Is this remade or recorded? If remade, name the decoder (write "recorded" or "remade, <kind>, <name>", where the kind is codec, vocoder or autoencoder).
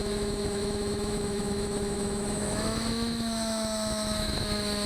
remade, autoencoder, DAC-VAE